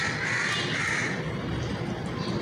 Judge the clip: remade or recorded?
recorded